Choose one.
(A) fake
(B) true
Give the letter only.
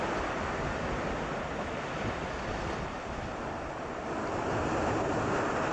B